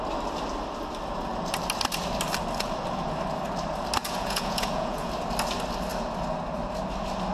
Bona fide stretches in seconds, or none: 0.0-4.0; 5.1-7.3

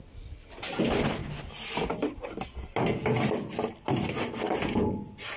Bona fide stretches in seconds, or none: 0.0-5.4

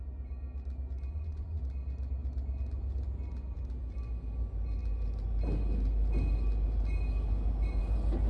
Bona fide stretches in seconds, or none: 0.0-1.1; 1.6-8.3

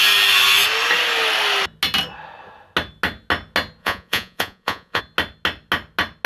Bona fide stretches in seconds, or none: 0.0-3.8; 5.0-6.3

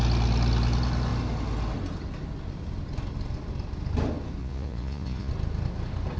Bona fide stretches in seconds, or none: 0.0-4.4; 5.3-6.2